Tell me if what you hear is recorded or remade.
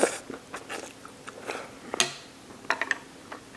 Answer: recorded